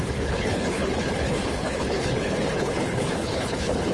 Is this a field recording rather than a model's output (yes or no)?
no